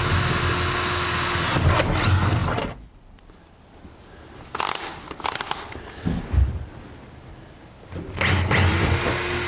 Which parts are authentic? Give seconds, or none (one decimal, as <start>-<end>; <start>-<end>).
0.0-9.5